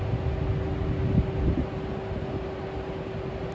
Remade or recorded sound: recorded